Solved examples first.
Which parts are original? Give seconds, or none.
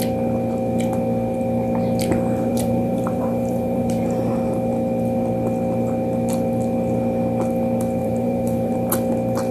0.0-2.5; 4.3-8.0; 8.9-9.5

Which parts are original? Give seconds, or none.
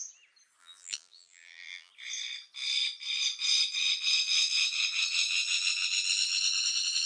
0.0-0.6; 1.9-7.1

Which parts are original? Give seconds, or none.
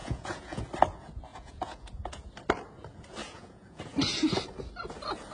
0.6-1.3; 2.3-3.2; 3.8-5.3